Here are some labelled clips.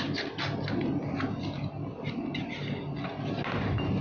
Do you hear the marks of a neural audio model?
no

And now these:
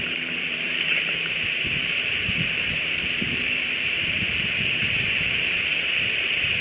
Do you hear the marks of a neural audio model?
yes